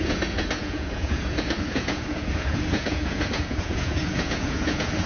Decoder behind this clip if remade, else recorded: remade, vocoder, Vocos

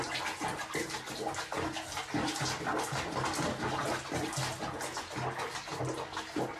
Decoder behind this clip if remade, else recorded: recorded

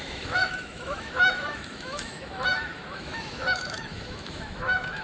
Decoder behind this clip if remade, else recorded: remade, autoencoder, DAC-VAE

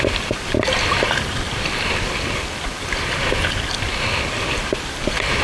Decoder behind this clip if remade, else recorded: recorded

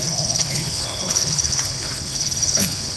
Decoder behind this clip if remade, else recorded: remade, codec, HILCodec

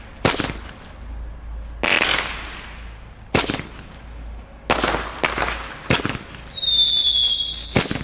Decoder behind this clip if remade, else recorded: recorded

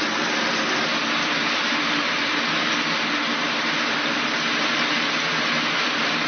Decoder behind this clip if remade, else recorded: recorded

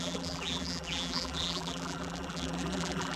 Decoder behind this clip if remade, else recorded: remade, vocoder, BigVGAN v2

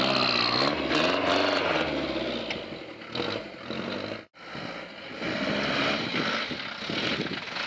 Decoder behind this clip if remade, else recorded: recorded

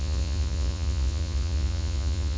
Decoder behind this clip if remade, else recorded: remade, vocoder, Vocos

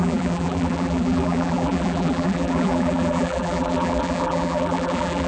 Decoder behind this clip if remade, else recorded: remade, vocoder, BigVGAN v2